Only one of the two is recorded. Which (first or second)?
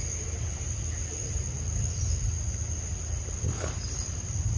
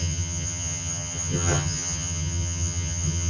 first